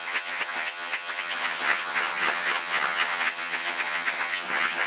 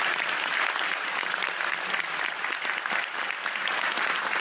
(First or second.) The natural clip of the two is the second